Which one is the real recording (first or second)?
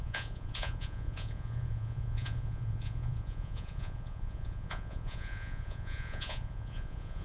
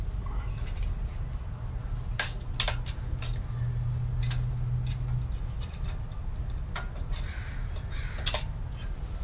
second